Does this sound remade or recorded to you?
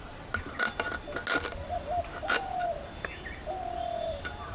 recorded